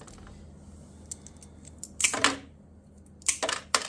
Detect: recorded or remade recorded